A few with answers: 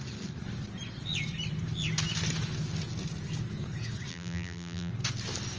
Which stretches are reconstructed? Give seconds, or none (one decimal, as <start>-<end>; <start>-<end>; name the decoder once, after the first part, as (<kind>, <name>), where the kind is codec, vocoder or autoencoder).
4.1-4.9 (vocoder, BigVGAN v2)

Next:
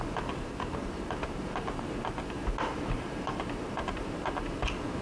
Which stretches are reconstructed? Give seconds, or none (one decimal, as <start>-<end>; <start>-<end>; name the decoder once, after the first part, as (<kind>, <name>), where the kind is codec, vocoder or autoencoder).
0.8-1.8 (vocoder, BigVGAN v2); 2.7-4.6

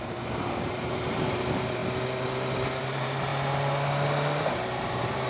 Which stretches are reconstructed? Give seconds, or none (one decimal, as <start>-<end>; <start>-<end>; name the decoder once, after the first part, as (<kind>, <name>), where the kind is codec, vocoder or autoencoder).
0.0-1.8 (vocoder, BigVGAN v2); 2.8-3.3; 4.4-5.3

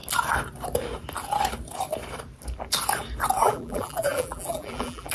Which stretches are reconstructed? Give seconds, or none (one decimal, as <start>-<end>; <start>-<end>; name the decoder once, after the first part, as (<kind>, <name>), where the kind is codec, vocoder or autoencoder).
3.4-5.1 (vocoder, BigVGAN v2)

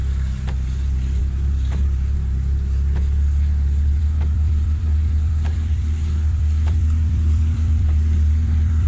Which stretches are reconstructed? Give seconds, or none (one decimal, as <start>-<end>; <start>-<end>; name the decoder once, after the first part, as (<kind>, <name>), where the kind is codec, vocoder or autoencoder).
0.0-8.9 (vocoder, BigVGAN v2)

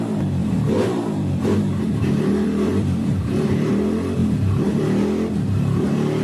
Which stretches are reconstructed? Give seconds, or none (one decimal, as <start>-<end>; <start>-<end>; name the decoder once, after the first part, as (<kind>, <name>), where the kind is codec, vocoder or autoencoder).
0.4-3.7 (vocoder, BigVGAN v2)

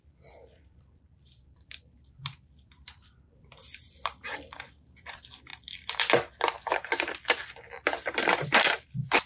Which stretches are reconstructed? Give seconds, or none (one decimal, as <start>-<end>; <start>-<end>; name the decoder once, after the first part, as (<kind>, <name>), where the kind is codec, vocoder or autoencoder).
0.0-9.3 (vocoder, BigVGAN v2)